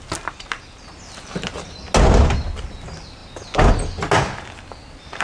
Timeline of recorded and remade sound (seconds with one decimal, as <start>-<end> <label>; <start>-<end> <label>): 0.0-5.2 recorded